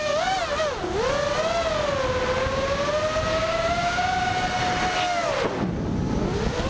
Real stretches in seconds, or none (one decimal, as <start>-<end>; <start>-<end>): 0.0-2.4; 2.9-3.3; 4.3-6.7